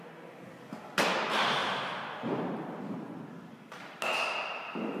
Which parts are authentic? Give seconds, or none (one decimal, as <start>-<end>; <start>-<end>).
0.0-5.0